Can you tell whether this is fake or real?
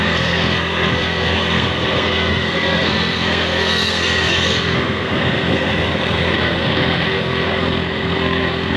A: fake